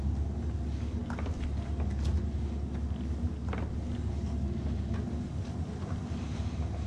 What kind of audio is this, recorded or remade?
recorded